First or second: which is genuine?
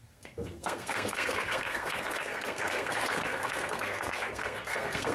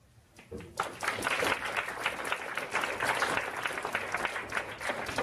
second